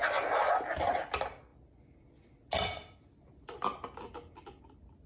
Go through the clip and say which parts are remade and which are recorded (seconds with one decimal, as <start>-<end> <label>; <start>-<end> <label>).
0.0-5.1 recorded